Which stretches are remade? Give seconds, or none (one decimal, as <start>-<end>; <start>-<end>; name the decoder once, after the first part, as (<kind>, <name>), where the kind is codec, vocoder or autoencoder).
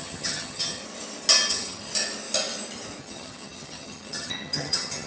0.0-0.8 (vocoder, HiFi-GAN); 1.5-1.9; 3.0-5.1